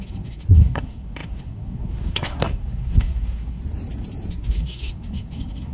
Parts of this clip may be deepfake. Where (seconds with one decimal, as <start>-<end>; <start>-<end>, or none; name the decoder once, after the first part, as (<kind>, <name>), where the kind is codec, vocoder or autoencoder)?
0.0-3.6 (codec, SNAC); 4.3-5.7